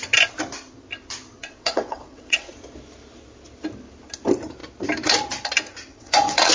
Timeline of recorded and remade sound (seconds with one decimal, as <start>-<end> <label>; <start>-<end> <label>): 0.0-1.4 recorded; 1.4-2.5 remade; 2.5-5.9 recorded; 5.9-6.5 remade